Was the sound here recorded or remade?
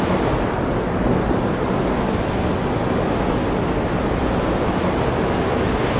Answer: recorded